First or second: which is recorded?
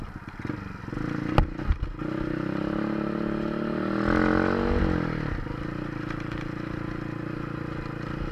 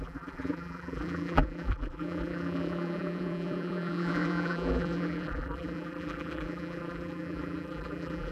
first